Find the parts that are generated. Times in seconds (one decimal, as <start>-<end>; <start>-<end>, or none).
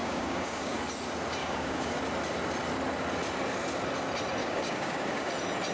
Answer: 0.0-0.8; 1.4-2.0; 4.4-5.3